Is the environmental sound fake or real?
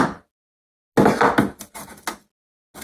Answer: real